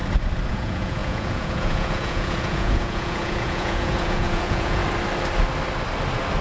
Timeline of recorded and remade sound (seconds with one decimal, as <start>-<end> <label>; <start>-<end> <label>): 0.0-0.5 recorded; 0.5-4.8 remade; 4.8-6.4 recorded